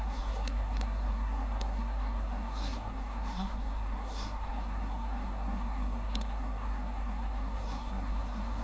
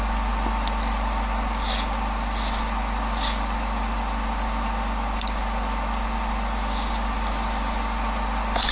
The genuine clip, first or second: second